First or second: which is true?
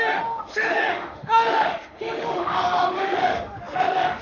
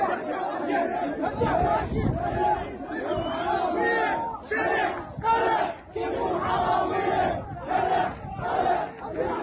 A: second